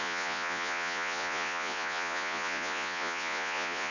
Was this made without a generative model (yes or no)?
no